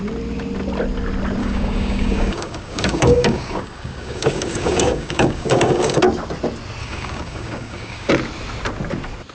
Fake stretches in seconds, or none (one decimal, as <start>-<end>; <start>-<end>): 1.4-6.0; 6.8-8.1